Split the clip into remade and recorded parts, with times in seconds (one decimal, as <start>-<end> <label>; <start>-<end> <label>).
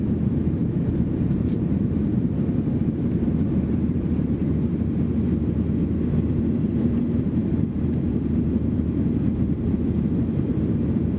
0.0-4.4 remade; 4.4-6.6 recorded; 6.6-11.2 remade